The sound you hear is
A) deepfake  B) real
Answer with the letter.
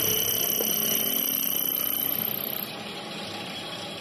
B